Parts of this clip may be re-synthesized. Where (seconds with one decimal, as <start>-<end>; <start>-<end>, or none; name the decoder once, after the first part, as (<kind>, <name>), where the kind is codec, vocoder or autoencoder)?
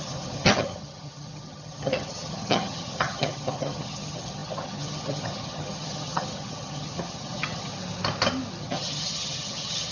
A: 0.0-7.7 (vocoder, HiFi-GAN); 8.6-9.9